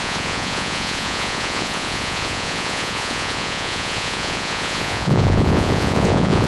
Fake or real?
fake